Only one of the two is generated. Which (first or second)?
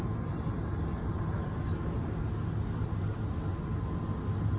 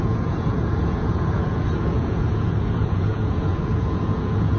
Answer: second